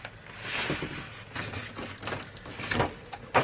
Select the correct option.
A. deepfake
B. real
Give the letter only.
B